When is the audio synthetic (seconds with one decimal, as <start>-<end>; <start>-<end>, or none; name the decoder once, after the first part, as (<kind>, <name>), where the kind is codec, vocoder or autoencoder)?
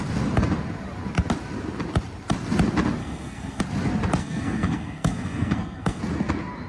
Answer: 3.0-3.6 (codec, SNAC); 4.2-6.0